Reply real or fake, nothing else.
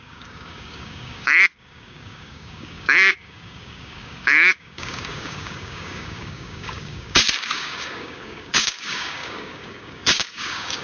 fake